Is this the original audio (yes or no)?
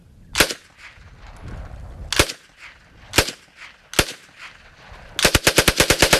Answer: yes